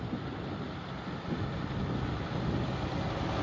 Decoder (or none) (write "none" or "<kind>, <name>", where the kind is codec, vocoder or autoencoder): none